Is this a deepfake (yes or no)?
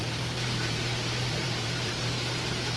yes